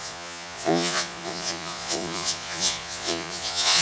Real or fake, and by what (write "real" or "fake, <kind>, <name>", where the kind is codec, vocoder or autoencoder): fake, vocoder, Vocos